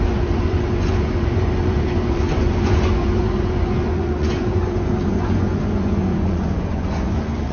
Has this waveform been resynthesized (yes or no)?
yes